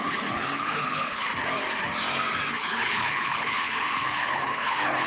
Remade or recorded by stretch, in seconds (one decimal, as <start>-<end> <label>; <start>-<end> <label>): 0.0-1.3 remade; 1.3-2.5 recorded; 2.5-5.1 remade